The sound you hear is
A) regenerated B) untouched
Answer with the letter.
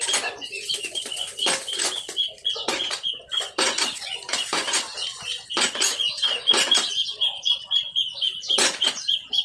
A